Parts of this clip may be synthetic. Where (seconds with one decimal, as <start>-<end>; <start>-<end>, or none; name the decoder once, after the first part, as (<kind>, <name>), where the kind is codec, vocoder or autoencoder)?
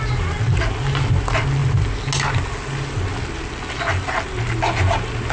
none